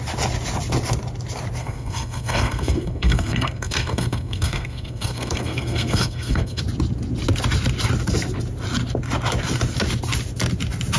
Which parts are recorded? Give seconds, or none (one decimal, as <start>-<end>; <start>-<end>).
0.0-1.6; 6.6-11.0